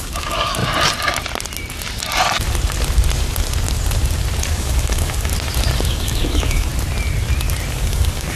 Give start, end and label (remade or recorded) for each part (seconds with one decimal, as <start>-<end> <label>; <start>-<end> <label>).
0.0-0.6 remade; 0.6-4.5 recorded; 4.5-5.3 remade; 5.3-5.8 recorded; 5.8-6.7 remade; 6.7-7.7 recorded; 7.7-8.4 remade